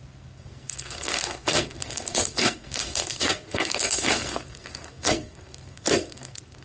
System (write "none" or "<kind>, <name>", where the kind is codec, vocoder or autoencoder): codec, SNAC